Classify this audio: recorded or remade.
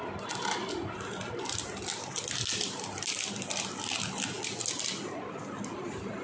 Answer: recorded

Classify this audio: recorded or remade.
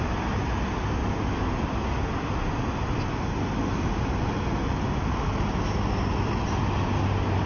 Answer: recorded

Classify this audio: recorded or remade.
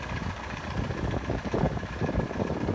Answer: remade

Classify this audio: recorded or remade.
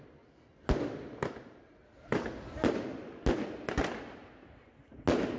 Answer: recorded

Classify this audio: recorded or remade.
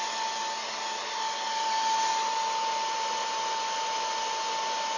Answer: recorded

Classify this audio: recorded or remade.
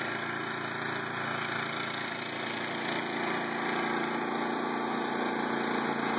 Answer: recorded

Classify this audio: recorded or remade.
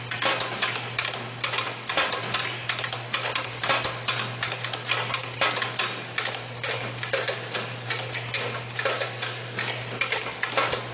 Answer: recorded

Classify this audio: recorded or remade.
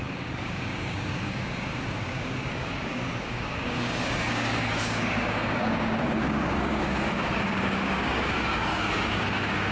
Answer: remade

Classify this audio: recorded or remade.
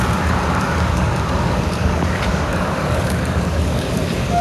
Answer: remade